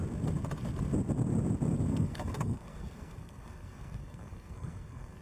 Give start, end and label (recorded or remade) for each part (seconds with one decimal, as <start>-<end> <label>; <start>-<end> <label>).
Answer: 0.0-1.9 recorded; 1.9-5.2 remade